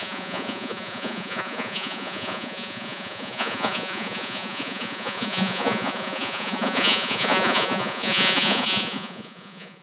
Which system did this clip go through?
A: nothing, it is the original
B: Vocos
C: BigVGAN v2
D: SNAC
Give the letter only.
B